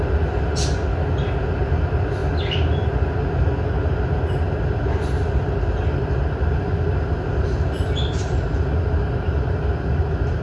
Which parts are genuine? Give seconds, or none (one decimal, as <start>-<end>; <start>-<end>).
0.0-10.4